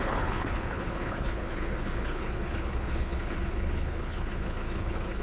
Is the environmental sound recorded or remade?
remade